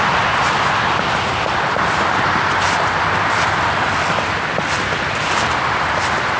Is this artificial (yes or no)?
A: no